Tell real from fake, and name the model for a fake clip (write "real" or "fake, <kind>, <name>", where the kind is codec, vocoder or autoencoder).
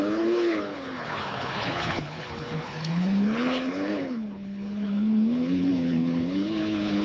fake, codec, HILCodec